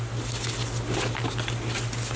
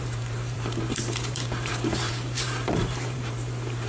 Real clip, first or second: first